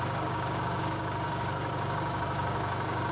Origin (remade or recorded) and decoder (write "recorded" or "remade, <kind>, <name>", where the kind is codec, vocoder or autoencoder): remade, codec, DAC